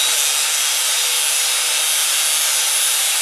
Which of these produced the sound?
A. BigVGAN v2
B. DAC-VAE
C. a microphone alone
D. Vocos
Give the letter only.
C